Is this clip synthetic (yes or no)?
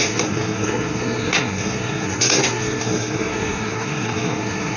yes